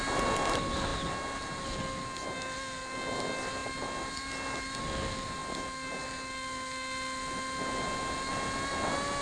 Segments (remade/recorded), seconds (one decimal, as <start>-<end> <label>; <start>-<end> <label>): 0.0-9.2 recorded